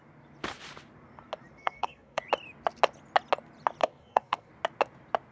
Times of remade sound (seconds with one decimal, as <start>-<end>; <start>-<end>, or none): 1.6-2.2; 3.8-4.5